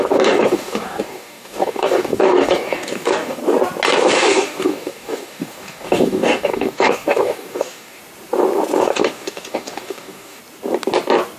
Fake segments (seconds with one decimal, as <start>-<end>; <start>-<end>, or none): 0.0-3.4; 4.1-8.0; 8.8-10.4